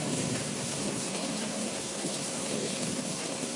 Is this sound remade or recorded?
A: remade